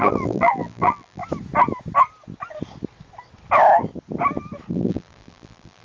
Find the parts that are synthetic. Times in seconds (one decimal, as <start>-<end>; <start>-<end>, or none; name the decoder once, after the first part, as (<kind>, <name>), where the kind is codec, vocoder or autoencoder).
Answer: 0.0-1.2 (vocoder, BigVGAN v2); 4.7-5.8